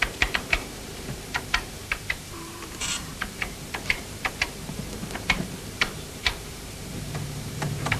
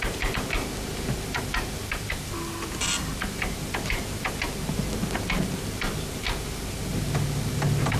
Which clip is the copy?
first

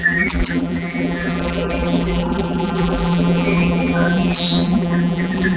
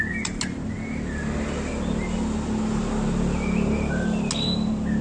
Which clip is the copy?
first